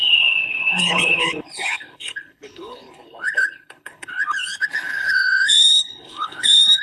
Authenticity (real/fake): fake